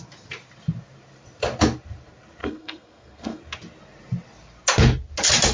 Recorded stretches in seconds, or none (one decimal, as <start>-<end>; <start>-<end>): 0.0-2.4; 3.4-5.5

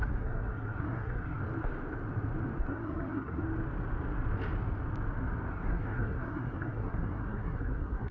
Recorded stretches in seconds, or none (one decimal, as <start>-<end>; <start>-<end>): 1.4-2.6; 3.4-5.5

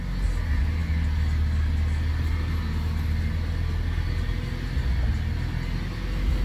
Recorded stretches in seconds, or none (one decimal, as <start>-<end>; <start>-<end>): 0.0-6.4

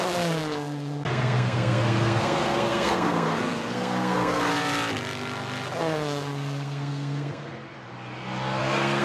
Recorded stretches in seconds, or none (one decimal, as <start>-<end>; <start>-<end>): 4.5-5.8; 7.5-8.6

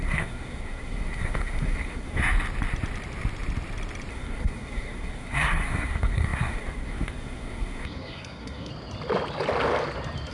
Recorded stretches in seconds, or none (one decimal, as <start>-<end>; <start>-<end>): 2.2-4.1; 8.7-10.3

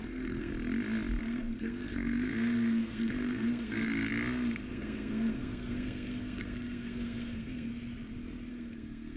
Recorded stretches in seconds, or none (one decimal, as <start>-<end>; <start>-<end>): 0.5-1.2; 4.1-4.7; 7.7-8.5